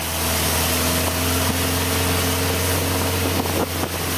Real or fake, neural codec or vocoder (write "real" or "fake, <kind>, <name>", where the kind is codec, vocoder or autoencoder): real